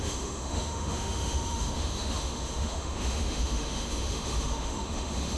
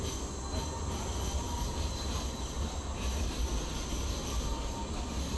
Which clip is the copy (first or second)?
first